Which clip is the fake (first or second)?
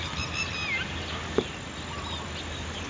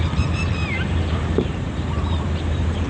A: second